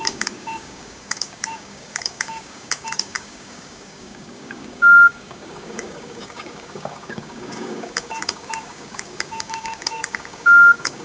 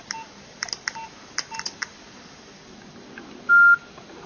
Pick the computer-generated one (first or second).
first